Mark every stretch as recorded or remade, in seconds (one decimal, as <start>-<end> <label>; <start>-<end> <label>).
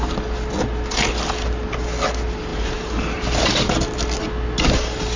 0.0-2.5 recorded; 2.5-3.7 remade; 3.7-5.2 recorded